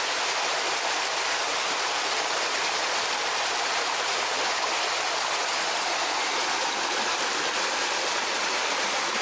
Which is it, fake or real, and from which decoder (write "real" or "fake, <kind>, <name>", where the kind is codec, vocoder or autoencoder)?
real